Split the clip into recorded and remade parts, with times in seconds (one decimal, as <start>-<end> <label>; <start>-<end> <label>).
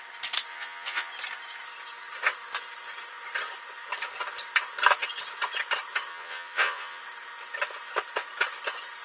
0.0-0.5 recorded; 0.5-1.1 remade; 1.1-6.1 recorded; 6.1-7.0 remade; 7.0-9.0 recorded